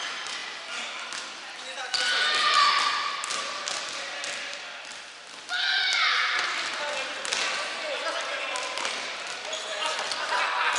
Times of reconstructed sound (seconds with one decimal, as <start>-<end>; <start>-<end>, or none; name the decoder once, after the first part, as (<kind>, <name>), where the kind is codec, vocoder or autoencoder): none